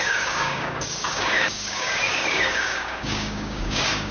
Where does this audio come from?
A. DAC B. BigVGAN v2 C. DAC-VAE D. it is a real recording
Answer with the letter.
A